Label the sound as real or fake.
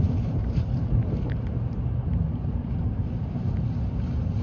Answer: fake